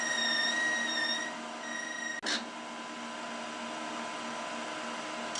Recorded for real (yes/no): yes